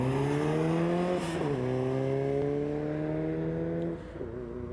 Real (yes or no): yes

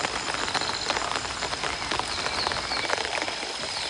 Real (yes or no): yes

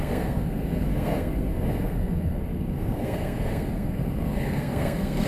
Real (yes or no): no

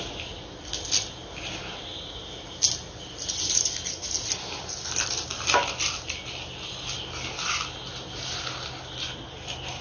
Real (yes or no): yes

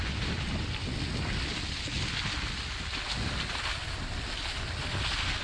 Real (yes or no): yes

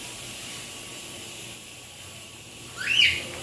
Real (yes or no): no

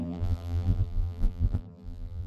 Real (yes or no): no